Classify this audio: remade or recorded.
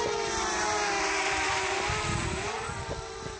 recorded